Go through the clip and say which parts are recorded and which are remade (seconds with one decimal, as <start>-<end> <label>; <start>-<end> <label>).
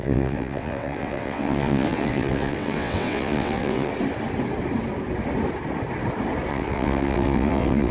0.0-3.9 remade; 3.9-6.5 recorded; 6.5-7.9 remade